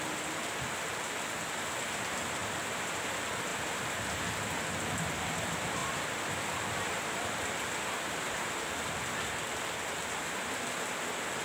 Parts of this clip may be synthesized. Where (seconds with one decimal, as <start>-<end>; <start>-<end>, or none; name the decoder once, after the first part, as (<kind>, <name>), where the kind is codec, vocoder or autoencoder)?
2.4-3.1 (vocoder, BigVGAN v2); 3.5-4.2; 5.8-8.6